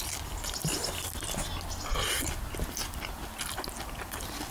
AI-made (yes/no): no